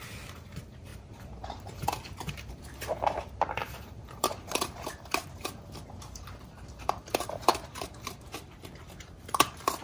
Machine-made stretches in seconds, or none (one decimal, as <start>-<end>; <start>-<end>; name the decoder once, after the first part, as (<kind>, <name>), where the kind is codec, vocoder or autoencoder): 0.0-9.8 (vocoder, BigVGAN v2)